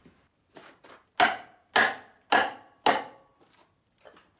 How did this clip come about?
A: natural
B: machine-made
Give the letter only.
A